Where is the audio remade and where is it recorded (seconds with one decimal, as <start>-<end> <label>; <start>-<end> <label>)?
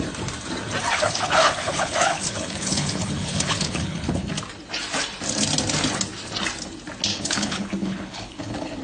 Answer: 0.0-0.9 recorded; 0.9-4.3 remade; 4.3-7.1 recorded; 7.1-8.8 remade